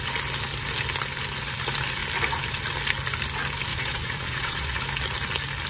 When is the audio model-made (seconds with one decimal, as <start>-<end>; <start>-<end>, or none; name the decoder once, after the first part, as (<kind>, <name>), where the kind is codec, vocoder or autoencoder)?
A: 3.7-4.8 (vocoder, Vocos)